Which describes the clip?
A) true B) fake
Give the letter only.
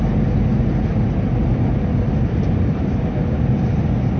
A